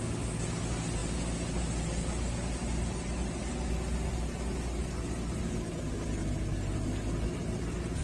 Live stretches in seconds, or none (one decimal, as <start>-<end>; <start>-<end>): 0.0-8.0